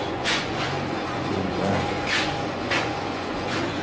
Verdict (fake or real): fake